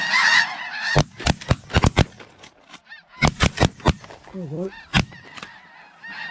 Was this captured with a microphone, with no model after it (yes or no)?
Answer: yes